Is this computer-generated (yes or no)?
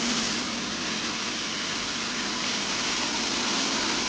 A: no